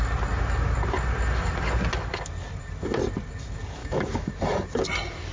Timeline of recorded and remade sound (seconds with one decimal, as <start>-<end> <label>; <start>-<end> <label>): 0.0-3.8 recorded; 3.8-4.3 remade; 4.3-5.3 recorded